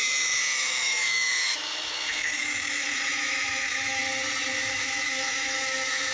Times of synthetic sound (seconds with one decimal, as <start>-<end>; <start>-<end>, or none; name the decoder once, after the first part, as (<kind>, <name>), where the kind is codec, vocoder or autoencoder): 0.0-4.0 (autoencoder, DAC-VAE); 4.7-6.1